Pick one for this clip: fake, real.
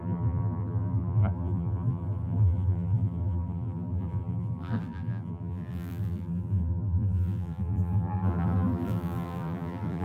fake